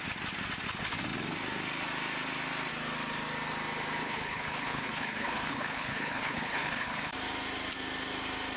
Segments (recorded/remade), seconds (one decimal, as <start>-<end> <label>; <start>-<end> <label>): 0.0-4.0 recorded; 4.0-7.1 remade; 7.1-8.6 recorded